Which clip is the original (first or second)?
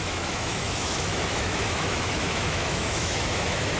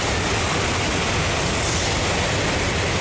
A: second